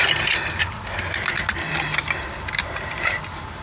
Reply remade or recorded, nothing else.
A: recorded